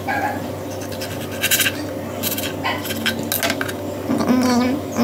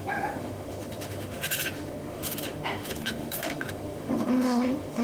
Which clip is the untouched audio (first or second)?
first